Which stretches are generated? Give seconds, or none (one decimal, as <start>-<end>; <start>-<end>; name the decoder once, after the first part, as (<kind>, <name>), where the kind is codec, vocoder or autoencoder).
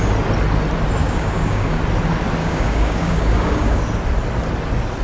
1.0-1.8 (codec, DAC); 2.4-3.8